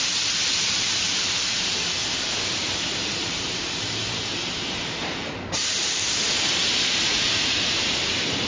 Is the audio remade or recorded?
remade